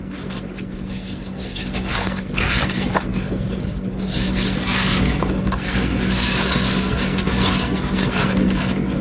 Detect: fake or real fake